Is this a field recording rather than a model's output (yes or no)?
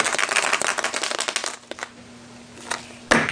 yes